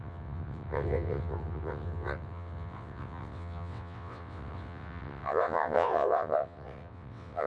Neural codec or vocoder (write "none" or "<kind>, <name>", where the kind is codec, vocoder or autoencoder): vocoder, WaveNeXt